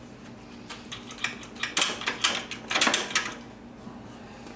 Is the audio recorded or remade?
recorded